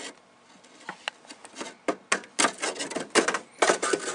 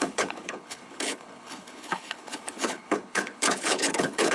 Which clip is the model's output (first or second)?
second